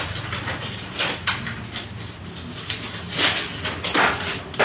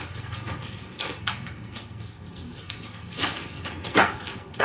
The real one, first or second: first